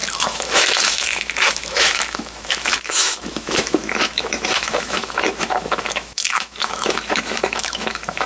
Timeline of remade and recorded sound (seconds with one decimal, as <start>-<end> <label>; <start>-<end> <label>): 0.0-8.3 remade